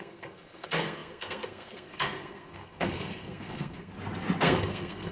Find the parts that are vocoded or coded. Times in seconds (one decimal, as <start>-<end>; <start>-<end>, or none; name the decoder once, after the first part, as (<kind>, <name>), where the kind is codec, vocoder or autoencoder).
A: 0.0-3.9 (codec, SNAC); 4.4-5.1